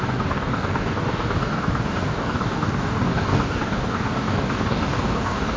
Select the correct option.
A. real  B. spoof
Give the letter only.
B